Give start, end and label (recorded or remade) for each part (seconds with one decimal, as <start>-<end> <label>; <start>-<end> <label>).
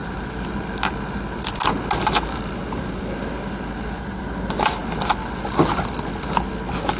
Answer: 0.0-7.0 recorded